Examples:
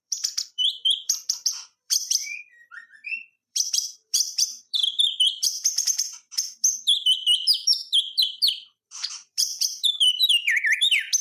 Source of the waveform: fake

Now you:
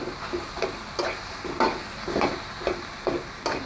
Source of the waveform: real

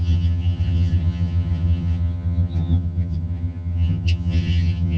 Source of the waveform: fake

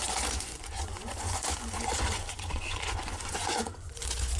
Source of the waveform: fake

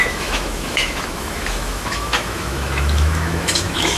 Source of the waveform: fake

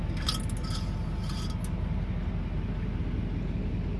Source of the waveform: real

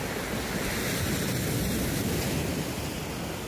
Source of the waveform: real